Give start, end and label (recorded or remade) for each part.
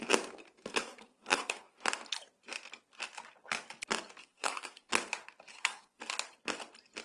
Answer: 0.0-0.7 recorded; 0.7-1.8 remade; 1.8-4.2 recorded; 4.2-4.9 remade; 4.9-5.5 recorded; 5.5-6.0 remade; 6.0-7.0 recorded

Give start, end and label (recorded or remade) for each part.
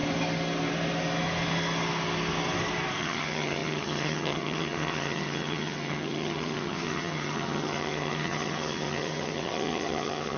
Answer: 0.0-3.0 recorded; 3.0-10.4 remade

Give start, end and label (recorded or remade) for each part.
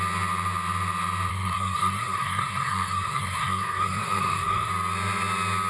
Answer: 0.0-1.3 recorded; 1.3-4.7 remade; 4.7-5.7 recorded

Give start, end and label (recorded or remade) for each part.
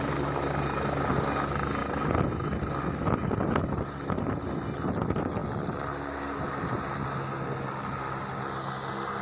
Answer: 0.0-9.2 recorded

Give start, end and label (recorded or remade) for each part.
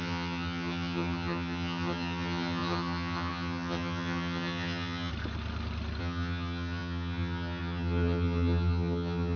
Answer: 0.0-5.1 remade; 5.1-6.0 recorded; 6.0-9.4 remade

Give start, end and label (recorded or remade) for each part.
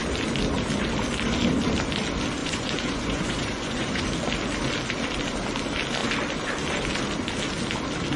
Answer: 0.0-2.4 recorded; 2.4-4.0 remade; 4.0-8.2 recorded